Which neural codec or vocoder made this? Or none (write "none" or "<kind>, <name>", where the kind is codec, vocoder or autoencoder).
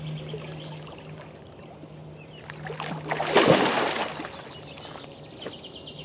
none